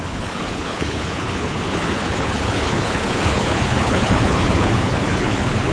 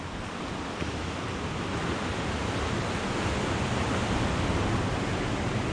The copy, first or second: first